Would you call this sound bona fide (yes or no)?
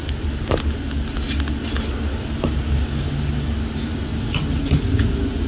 yes